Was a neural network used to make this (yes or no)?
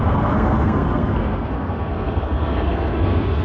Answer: yes